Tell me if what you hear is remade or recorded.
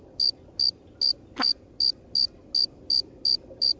recorded